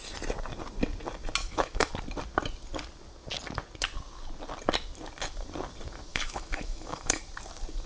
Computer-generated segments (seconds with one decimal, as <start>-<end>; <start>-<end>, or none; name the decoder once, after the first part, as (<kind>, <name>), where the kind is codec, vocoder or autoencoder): 1.4-1.9 (autoencoder, DAC-VAE); 6.1-7.2